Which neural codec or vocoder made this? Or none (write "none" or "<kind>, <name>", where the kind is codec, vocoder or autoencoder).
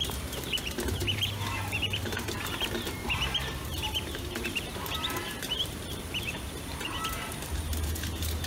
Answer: vocoder, BigVGAN v2